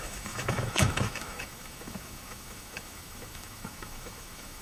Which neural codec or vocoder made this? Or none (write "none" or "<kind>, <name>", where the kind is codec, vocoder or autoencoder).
autoencoder, DAC-VAE